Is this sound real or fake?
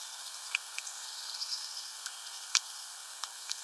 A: fake